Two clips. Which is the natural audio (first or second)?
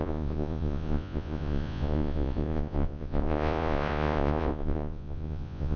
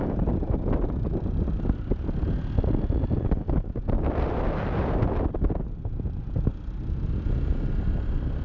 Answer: second